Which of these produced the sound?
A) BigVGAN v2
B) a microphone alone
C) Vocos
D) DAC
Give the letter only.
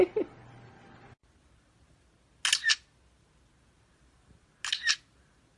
B